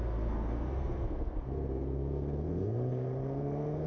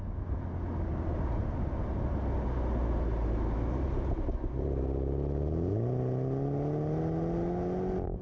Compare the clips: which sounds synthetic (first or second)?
first